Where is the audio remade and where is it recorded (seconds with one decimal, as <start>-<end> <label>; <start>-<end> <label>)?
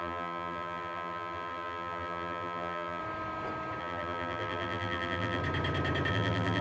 0.0-3.0 remade; 3.0-3.8 recorded; 3.8-5.4 remade; 5.4-6.1 recorded; 6.1-6.6 remade